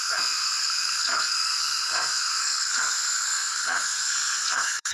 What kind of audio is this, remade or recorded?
remade